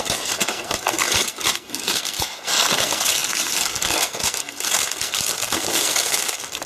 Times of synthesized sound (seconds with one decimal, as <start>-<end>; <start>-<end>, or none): 0.0-6.7